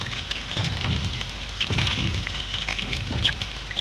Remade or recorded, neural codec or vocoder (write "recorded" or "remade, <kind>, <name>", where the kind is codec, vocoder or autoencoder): remade, autoencoder, DAC-VAE